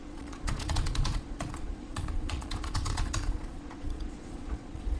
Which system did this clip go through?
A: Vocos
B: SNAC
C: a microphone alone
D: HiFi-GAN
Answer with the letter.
A